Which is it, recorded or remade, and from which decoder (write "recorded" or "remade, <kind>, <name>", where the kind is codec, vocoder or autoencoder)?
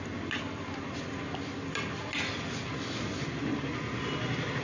recorded